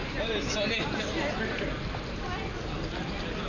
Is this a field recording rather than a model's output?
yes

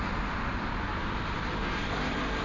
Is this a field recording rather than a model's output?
yes